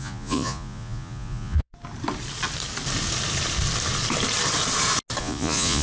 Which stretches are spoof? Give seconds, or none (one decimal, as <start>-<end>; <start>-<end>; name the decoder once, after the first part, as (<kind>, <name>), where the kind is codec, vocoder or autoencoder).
0.0-1.7 (vocoder, Vocos); 5.2-5.8

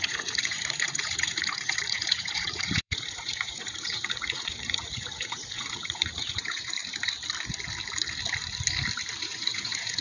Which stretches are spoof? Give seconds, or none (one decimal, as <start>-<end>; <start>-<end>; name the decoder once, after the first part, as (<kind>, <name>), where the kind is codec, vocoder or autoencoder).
0.0-6.8 (vocoder, Vocos); 9.2-10.0

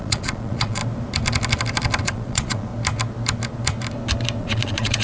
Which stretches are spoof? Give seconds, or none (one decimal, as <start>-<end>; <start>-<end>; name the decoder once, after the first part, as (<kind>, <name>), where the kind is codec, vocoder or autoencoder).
0.0-0.8 (vocoder, Vocos); 2.0-2.7; 4.4-5.0

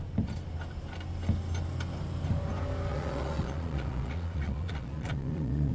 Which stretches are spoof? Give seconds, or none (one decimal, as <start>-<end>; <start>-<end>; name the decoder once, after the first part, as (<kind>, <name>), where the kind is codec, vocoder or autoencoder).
2.9-5.7 (vocoder, Vocos)

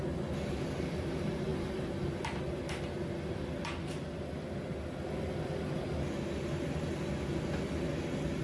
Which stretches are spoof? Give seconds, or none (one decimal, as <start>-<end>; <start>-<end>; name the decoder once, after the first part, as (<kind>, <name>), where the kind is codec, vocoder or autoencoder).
none

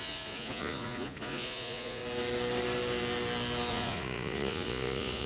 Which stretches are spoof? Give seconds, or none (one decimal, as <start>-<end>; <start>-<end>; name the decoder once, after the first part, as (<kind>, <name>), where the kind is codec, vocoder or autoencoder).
0.0-2.0 (vocoder, Vocos); 3.7-5.3

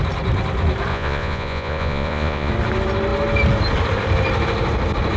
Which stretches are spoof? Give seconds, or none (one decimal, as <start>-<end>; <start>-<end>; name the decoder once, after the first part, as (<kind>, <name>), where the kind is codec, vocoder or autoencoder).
0.9-2.5 (vocoder, Vocos)